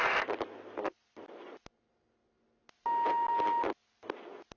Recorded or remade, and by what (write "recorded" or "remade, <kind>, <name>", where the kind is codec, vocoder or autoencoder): recorded